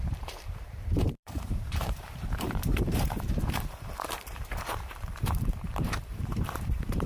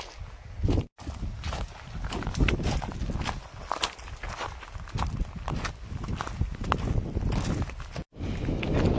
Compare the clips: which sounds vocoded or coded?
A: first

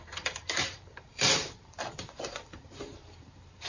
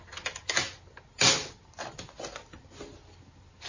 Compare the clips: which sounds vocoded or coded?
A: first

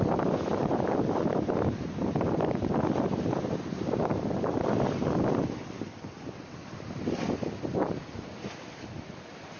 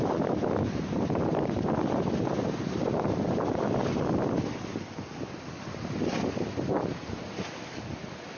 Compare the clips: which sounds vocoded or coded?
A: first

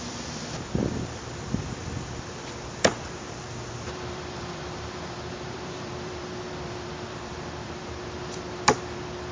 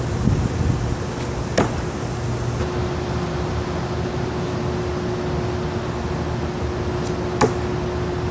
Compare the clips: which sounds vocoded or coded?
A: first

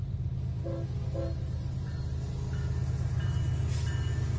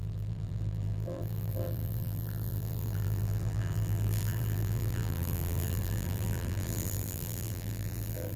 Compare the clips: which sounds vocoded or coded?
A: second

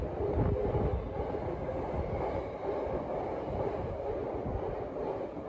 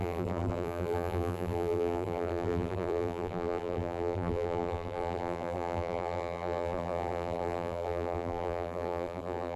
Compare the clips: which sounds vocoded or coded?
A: second